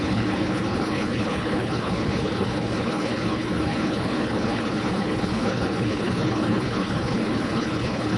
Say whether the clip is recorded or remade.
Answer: remade